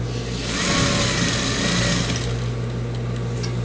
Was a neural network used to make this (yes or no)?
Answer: no